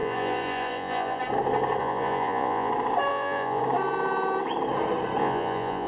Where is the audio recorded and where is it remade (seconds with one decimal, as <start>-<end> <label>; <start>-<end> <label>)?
0.0-1.2 remade; 1.2-1.8 recorded; 1.8-2.7 remade; 2.7-3.1 recorded; 3.1-3.6 remade; 3.6-5.2 recorded; 5.2-5.9 remade